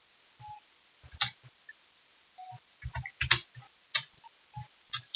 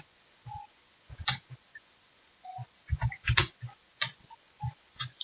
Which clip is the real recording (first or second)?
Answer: first